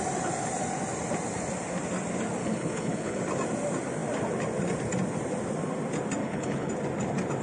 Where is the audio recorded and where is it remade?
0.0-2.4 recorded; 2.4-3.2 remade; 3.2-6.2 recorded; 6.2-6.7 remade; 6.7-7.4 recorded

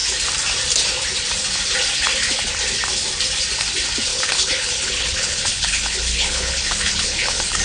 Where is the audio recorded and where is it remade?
0.0-4.1 recorded; 4.1-7.6 remade